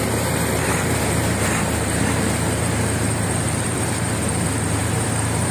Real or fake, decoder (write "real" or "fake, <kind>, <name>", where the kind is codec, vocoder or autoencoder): fake, vocoder, BigVGAN v2